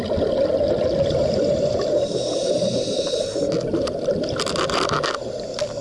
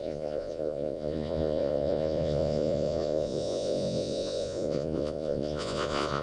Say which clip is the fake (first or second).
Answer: second